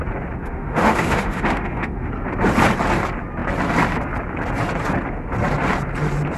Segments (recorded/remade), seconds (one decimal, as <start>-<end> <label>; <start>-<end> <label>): 0.0-0.4 recorded; 0.4-2.1 remade; 2.1-6.4 recorded